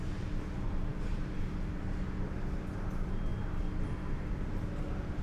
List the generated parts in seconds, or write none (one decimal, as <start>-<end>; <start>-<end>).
none